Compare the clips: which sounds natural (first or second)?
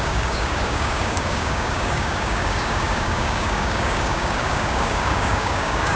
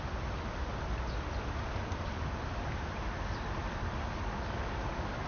second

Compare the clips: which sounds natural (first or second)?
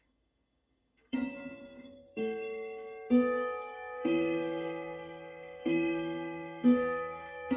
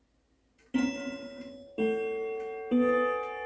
second